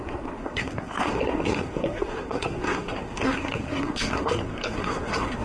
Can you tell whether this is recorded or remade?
remade